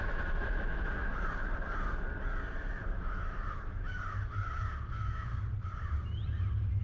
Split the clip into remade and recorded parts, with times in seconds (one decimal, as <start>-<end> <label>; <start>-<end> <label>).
0.0-1.1 remade; 1.1-2.9 recorded; 2.9-5.3 remade; 5.3-6.8 recorded